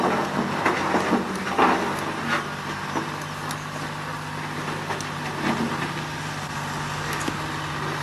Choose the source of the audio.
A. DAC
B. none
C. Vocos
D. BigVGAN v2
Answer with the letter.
B